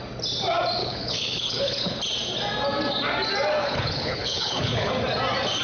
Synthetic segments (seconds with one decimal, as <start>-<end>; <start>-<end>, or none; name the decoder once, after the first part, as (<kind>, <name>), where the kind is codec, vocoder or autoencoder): 0.8-2.0 (codec, HILCodec); 3.6-4.9